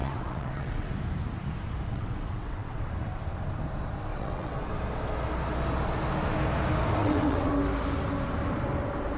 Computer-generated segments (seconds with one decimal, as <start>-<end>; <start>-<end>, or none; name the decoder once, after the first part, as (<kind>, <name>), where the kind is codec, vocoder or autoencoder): 0.0-0.9 (vocoder, WaveNeXt); 1.9-2.8; 4.1-4.7; 7.0-7.5